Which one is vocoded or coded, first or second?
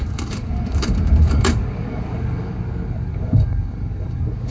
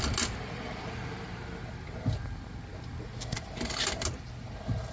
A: first